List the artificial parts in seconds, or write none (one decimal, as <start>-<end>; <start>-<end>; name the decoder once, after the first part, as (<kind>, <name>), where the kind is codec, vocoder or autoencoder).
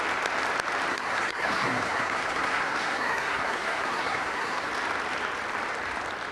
0.9-4.7 (codec, SNAC)